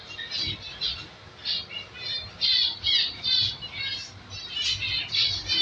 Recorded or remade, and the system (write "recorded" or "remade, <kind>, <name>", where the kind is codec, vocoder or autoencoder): recorded